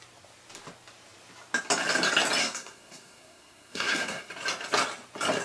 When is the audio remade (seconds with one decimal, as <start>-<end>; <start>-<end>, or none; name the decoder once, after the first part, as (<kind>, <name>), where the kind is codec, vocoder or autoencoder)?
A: 2.4-4.3 (codec, SNAC)